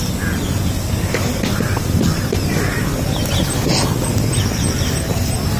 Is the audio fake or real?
real